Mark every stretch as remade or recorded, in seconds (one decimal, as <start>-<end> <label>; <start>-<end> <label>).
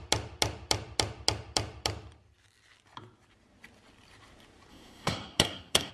0.0-4.7 recorded; 4.7-5.9 remade